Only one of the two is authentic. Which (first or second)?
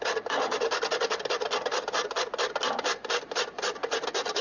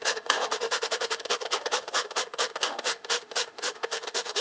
first